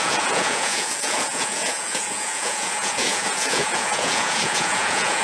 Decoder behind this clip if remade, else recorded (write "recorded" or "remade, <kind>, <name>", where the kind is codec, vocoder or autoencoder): remade, vocoder, Vocos